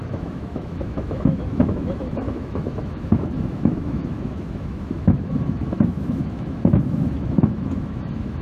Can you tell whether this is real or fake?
fake